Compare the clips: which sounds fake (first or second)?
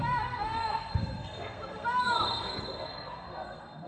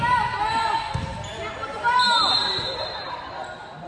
first